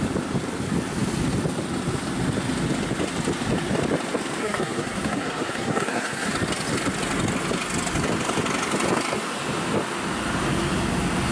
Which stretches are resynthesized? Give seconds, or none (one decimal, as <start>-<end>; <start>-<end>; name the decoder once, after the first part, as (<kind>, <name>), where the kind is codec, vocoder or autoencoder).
4.4-6.3 (codec, SNAC)